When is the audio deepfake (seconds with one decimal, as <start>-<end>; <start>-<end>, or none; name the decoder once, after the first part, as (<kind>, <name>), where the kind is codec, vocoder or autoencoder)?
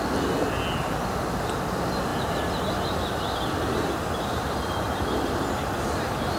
none